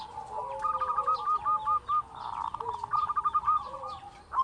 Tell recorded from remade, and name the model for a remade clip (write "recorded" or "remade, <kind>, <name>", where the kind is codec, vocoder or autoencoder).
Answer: recorded